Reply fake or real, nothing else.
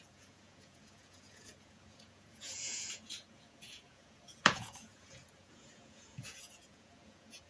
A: fake